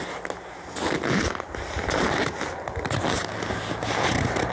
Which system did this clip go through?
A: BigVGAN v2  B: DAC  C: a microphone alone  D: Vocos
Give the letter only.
C